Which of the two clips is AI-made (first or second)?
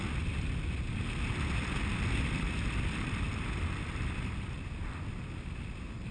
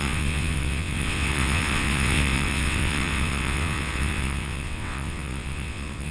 second